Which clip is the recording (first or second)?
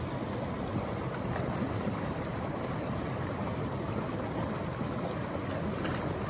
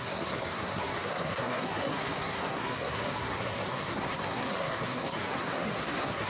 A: first